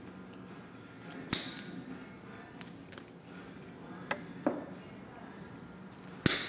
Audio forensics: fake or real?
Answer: real